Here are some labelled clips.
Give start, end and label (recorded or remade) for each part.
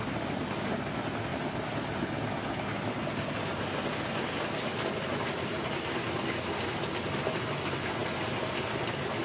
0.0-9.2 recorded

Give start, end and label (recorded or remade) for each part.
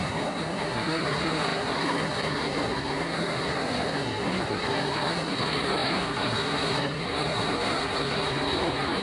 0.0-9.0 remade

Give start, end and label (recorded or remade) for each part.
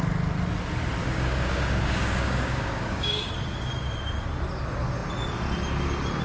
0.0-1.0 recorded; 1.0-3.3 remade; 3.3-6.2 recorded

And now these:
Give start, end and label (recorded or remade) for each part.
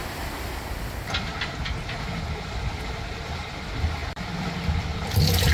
0.0-0.5 remade; 0.5-3.1 recorded; 3.1-5.5 remade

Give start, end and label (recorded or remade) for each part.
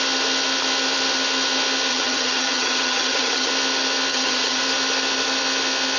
0.0-1.9 recorded; 1.9-3.5 remade; 3.5-4.1 recorded; 4.1-4.6 remade; 4.6-6.0 recorded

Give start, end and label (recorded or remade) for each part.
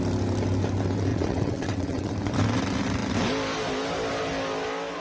0.0-1.1 recorded; 1.1-2.1 remade; 2.1-5.0 recorded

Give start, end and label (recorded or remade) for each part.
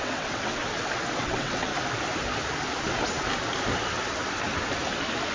0.0-0.6 remade; 0.6-1.2 recorded; 1.2-1.7 remade; 1.7-5.3 recorded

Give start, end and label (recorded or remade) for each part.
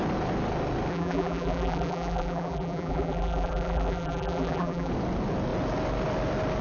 0.0-0.9 recorded; 0.9-4.9 remade; 4.9-6.6 recorded